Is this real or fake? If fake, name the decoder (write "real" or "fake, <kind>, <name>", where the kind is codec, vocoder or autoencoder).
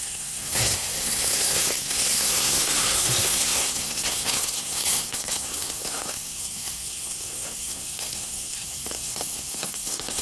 fake, codec, SNAC